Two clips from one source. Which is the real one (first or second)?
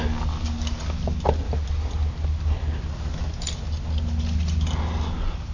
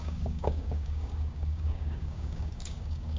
first